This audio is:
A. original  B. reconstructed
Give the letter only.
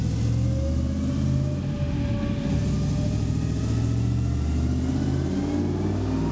A